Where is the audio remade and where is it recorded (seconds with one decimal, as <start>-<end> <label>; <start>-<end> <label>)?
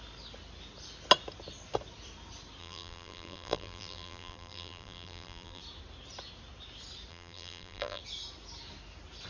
0.0-2.6 recorded; 2.6-5.6 remade; 5.6-7.1 recorded; 7.1-8.0 remade; 8.0-9.3 recorded